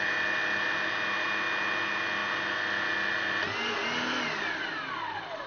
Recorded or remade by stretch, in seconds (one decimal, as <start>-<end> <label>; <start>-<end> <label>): 0.0-5.5 recorded